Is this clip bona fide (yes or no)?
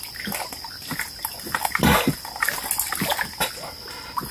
yes